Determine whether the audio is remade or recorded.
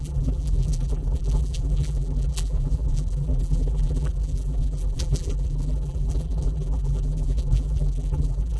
remade